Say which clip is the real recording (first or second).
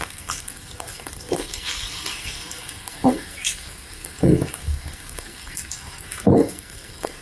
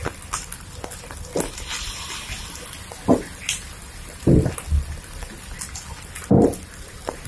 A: second